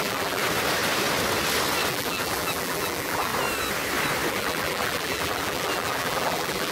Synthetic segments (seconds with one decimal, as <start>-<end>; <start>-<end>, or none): 0.0-0.4; 1.9-3.3; 4.3-6.7